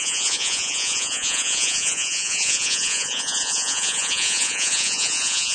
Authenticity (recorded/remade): remade